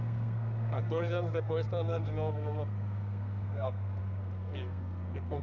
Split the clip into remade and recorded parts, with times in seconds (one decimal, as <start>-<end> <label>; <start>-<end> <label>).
0.0-5.4 remade